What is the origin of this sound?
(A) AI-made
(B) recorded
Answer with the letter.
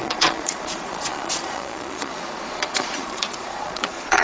A